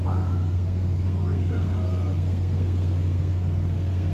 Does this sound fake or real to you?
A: fake